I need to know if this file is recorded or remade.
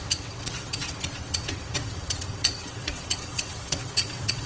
remade